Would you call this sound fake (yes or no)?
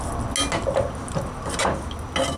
no